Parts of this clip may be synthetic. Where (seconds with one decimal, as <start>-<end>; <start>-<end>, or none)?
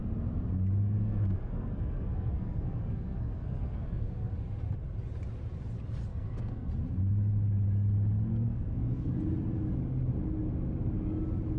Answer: 0.8-4.3; 6.1-6.7; 8.3-9.1